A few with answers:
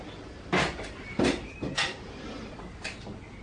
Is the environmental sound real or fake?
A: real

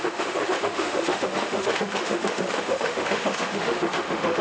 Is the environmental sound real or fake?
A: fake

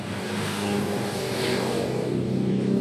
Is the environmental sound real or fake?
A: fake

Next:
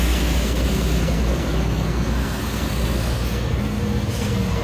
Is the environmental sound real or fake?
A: fake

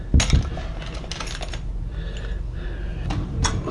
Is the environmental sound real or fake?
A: real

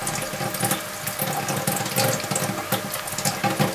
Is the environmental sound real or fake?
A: real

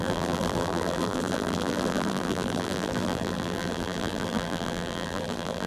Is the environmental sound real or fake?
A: fake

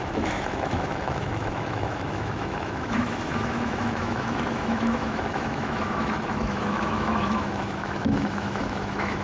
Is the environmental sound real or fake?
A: fake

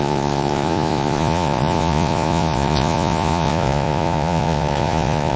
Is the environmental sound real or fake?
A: fake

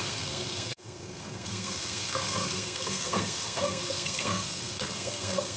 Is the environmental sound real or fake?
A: fake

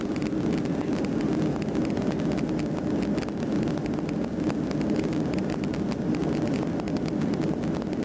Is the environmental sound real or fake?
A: real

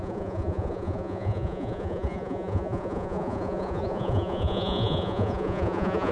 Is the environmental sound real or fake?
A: fake